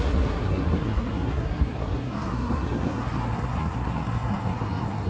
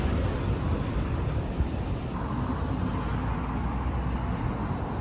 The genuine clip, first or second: second